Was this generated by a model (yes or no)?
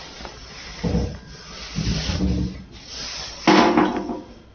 no